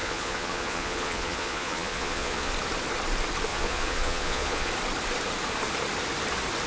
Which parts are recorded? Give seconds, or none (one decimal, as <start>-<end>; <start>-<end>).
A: 2.5-3.5; 4.7-6.7